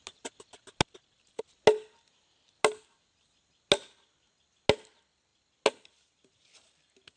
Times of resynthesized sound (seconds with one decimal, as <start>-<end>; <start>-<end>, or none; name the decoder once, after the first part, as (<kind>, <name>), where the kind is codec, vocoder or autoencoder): none